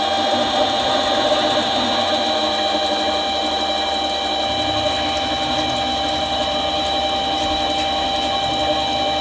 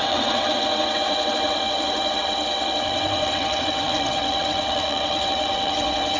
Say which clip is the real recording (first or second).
first